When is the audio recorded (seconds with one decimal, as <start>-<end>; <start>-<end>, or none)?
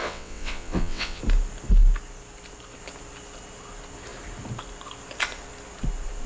1.2-6.3